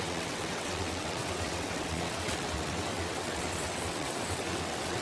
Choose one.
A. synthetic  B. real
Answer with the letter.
A